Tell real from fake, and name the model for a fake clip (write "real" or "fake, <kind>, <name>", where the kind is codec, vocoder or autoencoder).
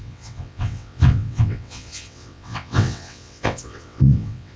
fake, vocoder, WaveNeXt